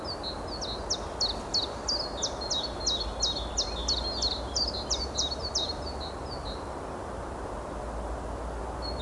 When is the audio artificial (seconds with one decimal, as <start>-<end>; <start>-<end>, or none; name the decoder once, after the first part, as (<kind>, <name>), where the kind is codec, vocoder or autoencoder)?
3.8-6.1 (vocoder, BigVGAN v2)